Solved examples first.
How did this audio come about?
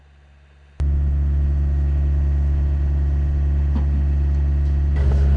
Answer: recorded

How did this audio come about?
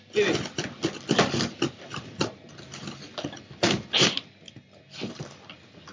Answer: recorded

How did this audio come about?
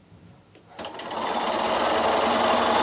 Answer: recorded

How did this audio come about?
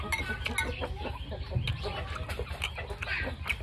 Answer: recorded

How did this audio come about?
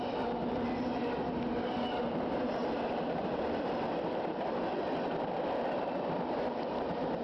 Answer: recorded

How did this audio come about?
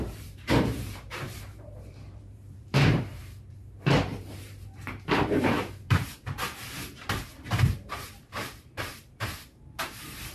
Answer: remade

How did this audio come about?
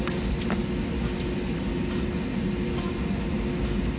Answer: recorded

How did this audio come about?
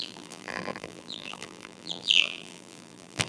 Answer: remade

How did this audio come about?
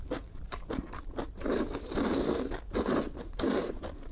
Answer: remade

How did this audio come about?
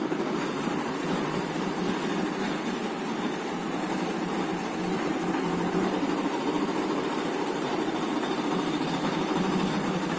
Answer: remade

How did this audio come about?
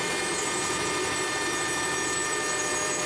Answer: remade